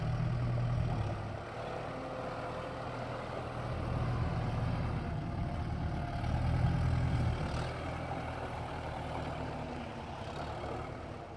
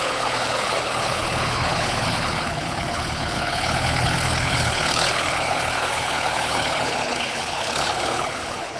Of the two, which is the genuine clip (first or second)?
first